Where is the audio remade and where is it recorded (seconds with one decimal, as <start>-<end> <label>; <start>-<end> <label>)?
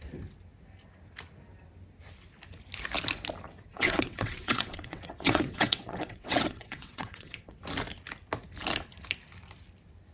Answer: 0.0-3.7 recorded; 3.7-7.6 remade; 7.6-10.1 recorded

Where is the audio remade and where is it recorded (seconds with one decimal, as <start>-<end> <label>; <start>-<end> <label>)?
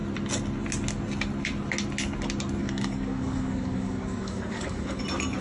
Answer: 0.0-2.6 recorded; 2.6-5.0 remade; 5.0-5.4 recorded